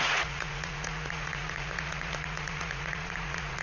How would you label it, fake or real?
fake